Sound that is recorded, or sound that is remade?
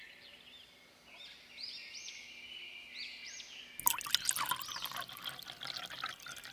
recorded